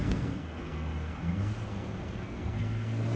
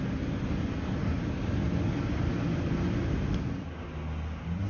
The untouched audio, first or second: second